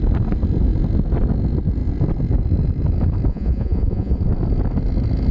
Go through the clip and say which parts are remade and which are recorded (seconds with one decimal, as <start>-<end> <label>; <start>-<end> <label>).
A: 0.0-3.3 recorded; 3.3-4.2 remade; 4.2-5.3 recorded